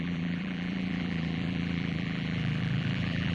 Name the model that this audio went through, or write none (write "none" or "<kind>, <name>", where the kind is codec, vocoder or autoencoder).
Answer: vocoder, BigVGAN v2